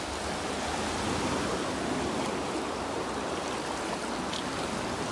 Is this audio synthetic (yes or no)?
no